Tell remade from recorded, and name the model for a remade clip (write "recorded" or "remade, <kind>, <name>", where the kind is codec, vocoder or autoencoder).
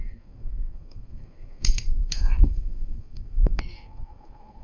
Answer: remade, codec, SNAC